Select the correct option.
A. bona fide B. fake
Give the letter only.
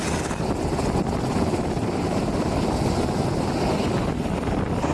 A